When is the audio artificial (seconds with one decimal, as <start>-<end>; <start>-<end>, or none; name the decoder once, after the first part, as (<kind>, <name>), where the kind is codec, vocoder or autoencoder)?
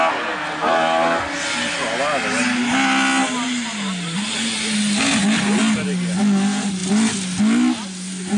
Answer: none